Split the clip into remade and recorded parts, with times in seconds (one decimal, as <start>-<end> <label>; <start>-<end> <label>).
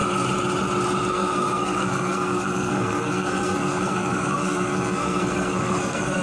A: 0.0-1.1 recorded; 1.1-6.2 remade